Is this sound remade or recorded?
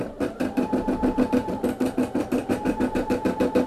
recorded